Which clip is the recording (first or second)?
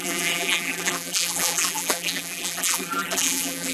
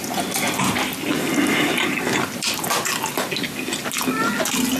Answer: second